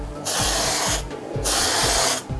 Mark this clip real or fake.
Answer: real